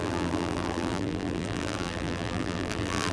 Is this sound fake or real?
fake